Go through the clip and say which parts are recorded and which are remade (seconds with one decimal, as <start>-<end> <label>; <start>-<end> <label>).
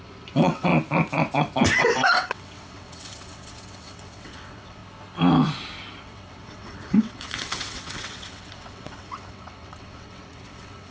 0.0-0.7 remade; 0.7-1.8 recorded; 1.8-4.8 remade; 4.8-6.0 recorded; 6.0-10.9 remade